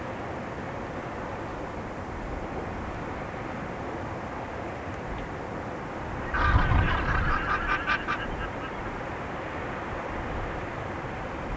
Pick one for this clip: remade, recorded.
recorded